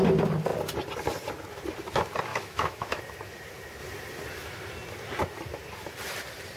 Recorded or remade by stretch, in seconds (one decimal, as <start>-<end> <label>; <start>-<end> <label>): 0.0-2.3 recorded; 2.3-3.0 remade; 3.0-6.6 recorded

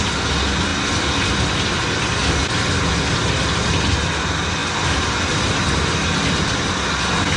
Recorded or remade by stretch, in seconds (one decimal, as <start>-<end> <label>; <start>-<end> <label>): 0.0-7.4 recorded

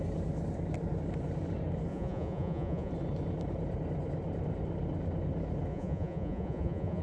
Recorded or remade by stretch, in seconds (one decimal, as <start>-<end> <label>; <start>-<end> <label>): 0.0-1.9 recorded; 1.9-2.9 remade; 2.9-5.7 recorded; 5.7-7.0 remade

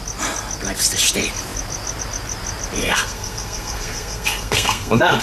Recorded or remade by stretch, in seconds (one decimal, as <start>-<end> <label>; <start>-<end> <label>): 0.0-2.8 recorded; 2.8-5.2 remade